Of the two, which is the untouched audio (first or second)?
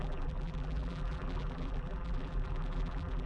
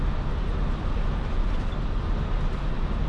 second